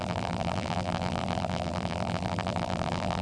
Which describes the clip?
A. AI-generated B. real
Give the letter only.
A